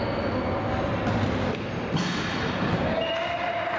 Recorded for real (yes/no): yes